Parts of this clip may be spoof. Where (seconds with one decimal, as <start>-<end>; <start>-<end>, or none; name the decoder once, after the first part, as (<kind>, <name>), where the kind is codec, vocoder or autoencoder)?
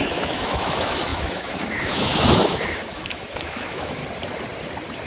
0.0-4.0 (autoencoder, DAC-VAE)